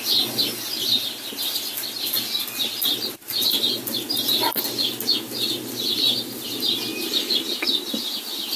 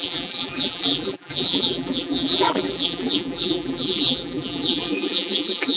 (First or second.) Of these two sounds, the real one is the first